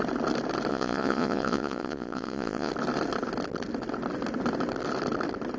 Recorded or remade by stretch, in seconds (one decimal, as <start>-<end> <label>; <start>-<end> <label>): 0.0-0.7 recorded; 0.7-2.7 remade; 2.7-5.6 recorded